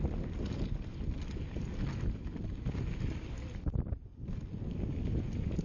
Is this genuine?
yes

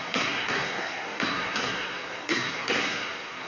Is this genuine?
no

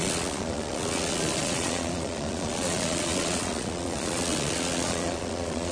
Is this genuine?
no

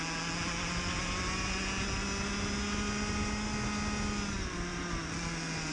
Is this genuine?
yes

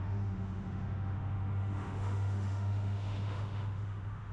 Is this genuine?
no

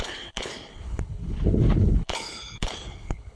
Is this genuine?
no